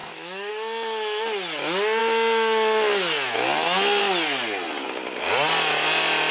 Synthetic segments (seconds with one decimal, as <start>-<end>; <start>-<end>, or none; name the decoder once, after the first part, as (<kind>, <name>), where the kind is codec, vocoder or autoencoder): 0.0-0.5 (autoencoder, DAC-VAE)